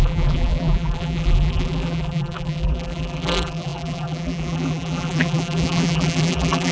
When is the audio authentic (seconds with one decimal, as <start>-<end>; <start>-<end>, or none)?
none